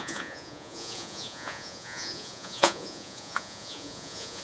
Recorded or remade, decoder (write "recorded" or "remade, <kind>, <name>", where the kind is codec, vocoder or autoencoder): remade, vocoder, Vocos